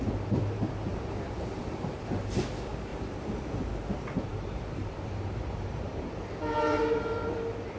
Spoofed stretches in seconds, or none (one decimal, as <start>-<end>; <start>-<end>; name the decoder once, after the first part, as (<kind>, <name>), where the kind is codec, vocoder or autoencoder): 0.9-1.6 (vocoder, BigVGAN v2); 4.3-5.9